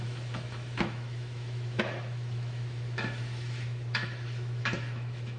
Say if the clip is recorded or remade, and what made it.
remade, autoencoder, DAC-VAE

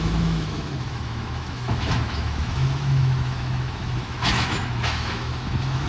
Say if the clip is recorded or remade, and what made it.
remade, autoencoder, DAC-VAE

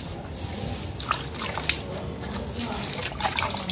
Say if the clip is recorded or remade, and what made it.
recorded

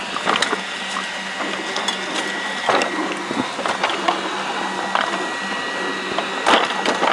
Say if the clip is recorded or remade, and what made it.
recorded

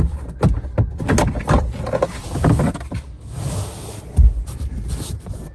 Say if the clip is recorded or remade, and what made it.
recorded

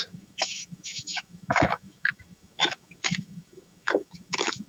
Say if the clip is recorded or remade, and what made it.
remade, autoencoder, DAC-VAE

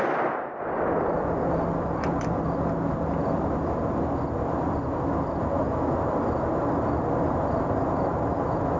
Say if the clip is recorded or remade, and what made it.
recorded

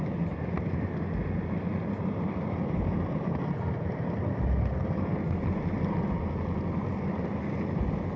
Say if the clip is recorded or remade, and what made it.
recorded